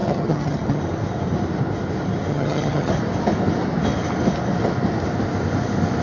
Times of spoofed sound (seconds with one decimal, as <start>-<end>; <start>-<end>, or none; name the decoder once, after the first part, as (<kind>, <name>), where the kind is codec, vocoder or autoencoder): 0.0-0.8 (vocoder, HiFi-GAN); 2.3-2.9